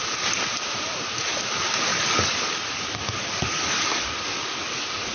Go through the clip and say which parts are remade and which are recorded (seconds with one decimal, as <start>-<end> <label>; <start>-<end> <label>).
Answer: 0.0-1.9 recorded; 1.9-5.1 remade